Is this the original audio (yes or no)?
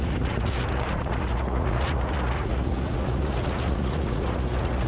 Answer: no